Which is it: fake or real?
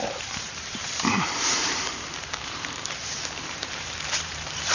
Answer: fake